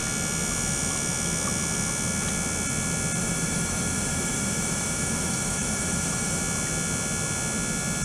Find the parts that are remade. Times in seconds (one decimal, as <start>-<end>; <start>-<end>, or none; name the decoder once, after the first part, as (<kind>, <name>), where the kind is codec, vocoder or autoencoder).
3.2-6.4 (autoencoder, DAC-VAE)